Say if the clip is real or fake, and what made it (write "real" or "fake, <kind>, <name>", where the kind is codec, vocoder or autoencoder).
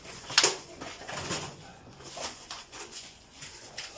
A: fake, vocoder, Vocos